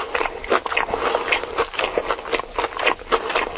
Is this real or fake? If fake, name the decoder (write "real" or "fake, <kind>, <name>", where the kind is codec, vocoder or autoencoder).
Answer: real